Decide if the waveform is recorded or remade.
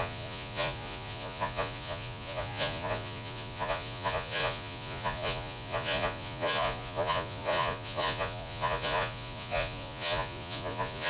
remade